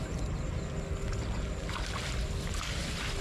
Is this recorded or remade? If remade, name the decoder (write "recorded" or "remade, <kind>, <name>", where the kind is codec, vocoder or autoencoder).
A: recorded